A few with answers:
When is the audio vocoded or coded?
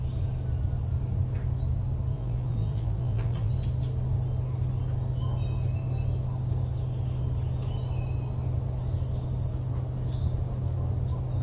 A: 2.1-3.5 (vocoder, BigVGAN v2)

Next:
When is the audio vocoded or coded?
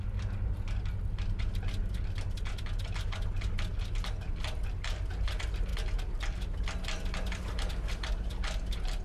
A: none